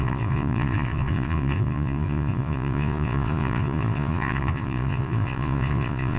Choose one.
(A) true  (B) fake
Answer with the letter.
B